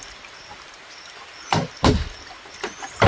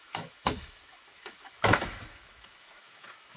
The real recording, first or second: first